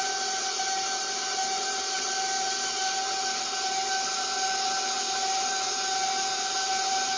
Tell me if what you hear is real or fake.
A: real